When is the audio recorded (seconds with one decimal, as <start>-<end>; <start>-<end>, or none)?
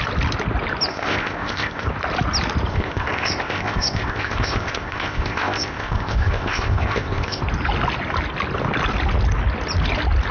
0.0-0.9; 1.9-2.7; 7.4-10.3